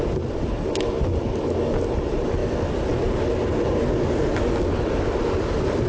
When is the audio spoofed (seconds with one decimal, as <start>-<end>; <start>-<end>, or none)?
none